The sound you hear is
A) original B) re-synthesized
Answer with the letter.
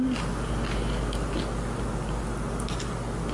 A